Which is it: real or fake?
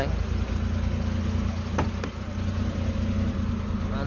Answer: real